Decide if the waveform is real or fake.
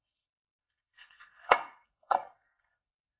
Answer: fake